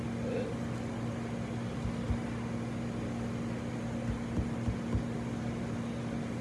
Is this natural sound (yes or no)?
yes